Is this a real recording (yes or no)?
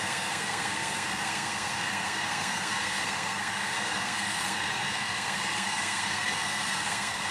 no